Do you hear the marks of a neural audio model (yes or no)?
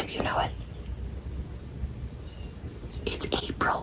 no